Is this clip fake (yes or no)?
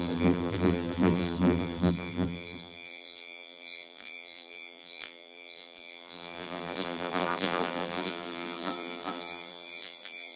yes